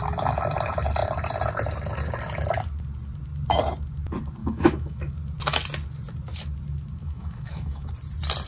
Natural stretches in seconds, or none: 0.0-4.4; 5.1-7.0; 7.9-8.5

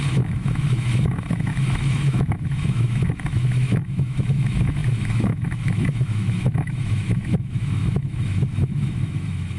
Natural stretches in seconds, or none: none

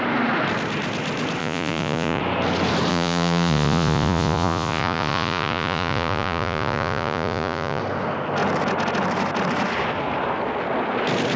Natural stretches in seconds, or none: 0.0-1.4; 2.2-2.9; 7.8-11.4

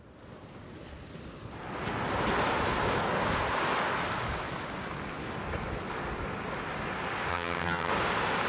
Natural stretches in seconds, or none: 0.0-7.3; 7.9-8.5

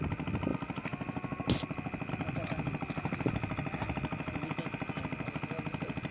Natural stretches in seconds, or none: 0.0-6.1

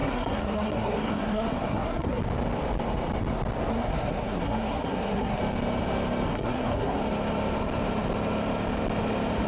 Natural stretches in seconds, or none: 2.2-3.7; 5.4-6.3; 7.0-9.5